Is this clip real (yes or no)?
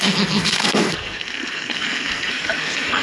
no